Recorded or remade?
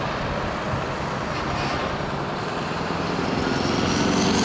recorded